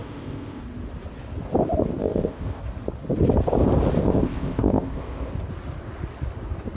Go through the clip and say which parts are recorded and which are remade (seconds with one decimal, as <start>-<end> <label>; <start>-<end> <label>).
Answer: 0.0-0.6 remade; 0.6-2.0 recorded; 2.0-2.6 remade; 2.6-4.0 recorded; 4.0-5.3 remade; 5.3-6.8 recorded

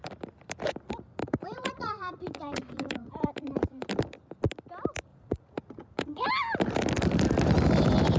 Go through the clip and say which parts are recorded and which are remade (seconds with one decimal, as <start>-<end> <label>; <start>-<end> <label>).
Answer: 0.0-1.2 recorded; 1.2-3.9 remade; 3.9-5.1 recorded; 5.1-6.3 remade; 6.3-8.2 recorded

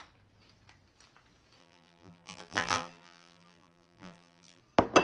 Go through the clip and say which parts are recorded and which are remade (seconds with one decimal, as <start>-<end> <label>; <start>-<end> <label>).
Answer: 0.0-1.6 recorded; 1.6-4.6 remade; 4.6-5.0 recorded

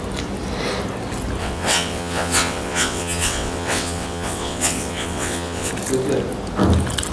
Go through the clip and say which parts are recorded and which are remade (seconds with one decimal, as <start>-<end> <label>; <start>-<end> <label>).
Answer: 0.0-1.4 recorded; 1.4-5.7 remade; 5.7-7.1 recorded

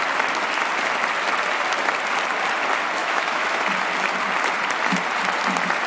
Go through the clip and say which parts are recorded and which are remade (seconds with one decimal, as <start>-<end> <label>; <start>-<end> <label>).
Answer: 0.0-3.0 recorded; 3.0-3.6 remade; 3.6-5.9 recorded

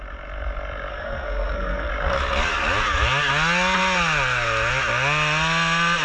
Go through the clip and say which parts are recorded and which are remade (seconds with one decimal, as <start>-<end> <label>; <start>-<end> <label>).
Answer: 0.0-0.9 recorded; 0.9-1.9 remade; 1.9-6.0 recorded